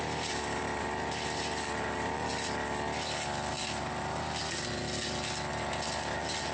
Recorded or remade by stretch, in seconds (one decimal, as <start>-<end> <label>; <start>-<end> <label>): 0.0-2.3 remade; 2.3-3.5 recorded; 3.5-4.4 remade; 4.4-5.6 recorded; 5.6-6.5 remade